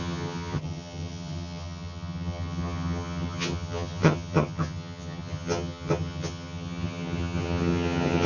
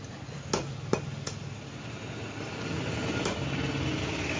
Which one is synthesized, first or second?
first